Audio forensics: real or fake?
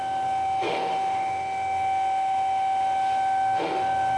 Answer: fake